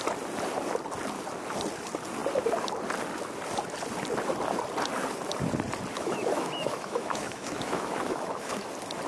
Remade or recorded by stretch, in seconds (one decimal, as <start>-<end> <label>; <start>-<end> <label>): 0.0-5.9 recorded; 5.9-8.7 remade; 8.7-9.1 recorded